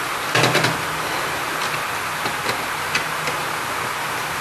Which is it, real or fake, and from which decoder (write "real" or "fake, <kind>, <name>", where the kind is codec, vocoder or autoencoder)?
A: real